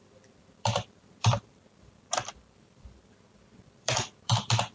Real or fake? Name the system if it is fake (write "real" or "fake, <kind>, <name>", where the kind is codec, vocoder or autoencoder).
fake, vocoder, BigVGAN v2